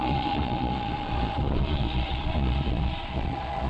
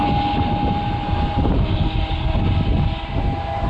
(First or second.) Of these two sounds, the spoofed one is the first